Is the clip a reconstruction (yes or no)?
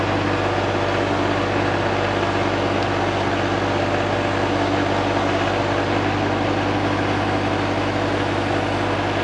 no